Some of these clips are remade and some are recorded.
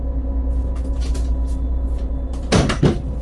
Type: recorded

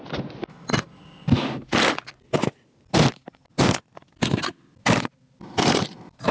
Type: recorded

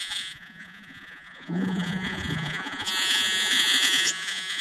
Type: remade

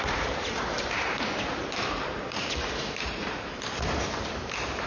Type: remade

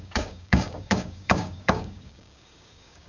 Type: remade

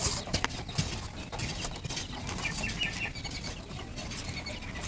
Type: recorded